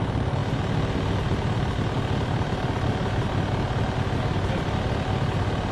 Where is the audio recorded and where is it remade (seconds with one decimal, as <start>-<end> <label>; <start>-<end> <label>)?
0.0-5.7 recorded